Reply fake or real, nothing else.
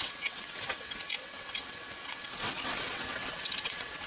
fake